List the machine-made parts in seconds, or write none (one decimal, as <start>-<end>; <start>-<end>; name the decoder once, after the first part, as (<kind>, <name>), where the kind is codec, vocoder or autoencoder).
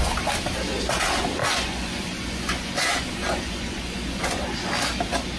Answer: 1.4-4.6 (vocoder, Vocos)